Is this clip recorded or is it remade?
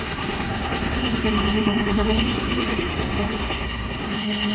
remade